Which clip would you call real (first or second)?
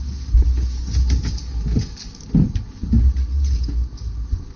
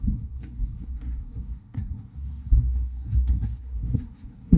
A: first